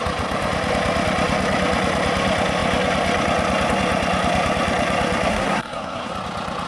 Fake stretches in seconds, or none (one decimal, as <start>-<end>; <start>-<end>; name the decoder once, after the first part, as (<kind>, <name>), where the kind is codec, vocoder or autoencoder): 5.3-6.1 (codec, SNAC)